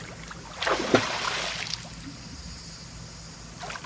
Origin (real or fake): real